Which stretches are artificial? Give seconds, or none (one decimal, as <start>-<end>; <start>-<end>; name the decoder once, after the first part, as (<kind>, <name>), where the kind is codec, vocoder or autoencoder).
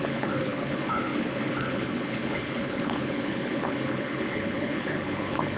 0.0-5.6 (codec, HILCodec)